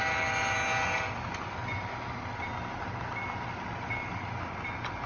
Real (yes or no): yes